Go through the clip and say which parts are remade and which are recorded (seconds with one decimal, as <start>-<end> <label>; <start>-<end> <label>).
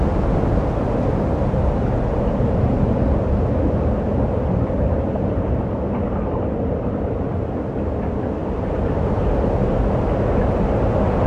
0.0-11.3 recorded